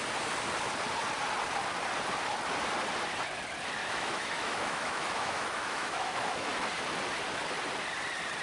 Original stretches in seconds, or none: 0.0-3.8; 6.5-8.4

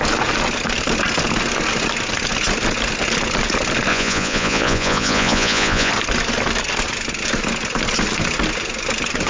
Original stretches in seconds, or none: 0.0-3.9; 5.9-9.3